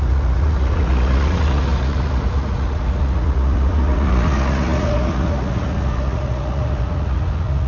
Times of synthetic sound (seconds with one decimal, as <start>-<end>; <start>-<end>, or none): 0.0-7.7